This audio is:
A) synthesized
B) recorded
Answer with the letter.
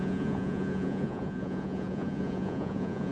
A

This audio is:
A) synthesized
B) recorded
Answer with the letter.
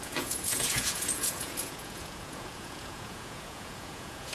A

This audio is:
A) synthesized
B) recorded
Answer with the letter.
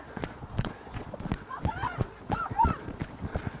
A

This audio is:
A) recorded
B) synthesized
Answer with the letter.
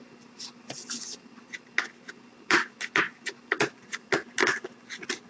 A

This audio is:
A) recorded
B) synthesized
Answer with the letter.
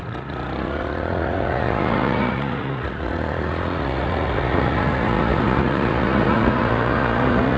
B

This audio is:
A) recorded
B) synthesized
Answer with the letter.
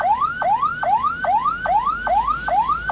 A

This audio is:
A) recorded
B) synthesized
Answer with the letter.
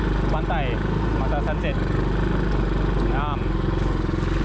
A